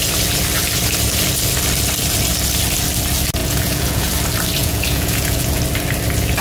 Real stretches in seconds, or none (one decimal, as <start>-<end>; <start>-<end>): 0.0-3.4; 4.1-4.6; 5.6-6.4